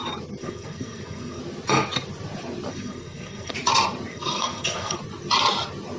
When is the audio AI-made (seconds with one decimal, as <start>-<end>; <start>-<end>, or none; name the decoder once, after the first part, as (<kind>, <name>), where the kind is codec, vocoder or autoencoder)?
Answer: 0.4-1.4 (codec, SNAC); 2.7-3.5; 4.1-5.0